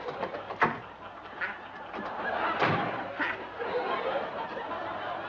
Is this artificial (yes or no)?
no